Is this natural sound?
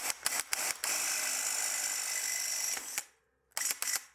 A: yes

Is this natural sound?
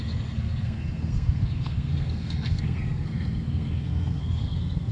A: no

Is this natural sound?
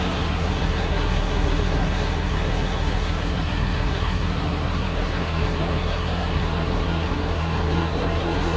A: no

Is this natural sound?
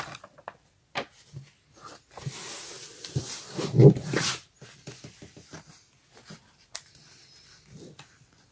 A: yes